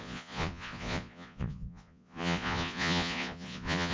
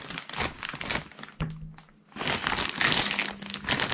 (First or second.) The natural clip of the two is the second